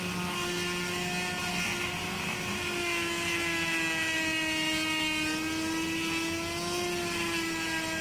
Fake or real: real